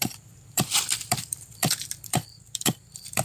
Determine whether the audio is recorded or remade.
remade